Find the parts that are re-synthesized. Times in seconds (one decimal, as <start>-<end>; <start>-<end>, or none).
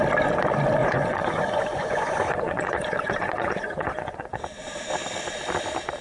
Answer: 0.8-4.4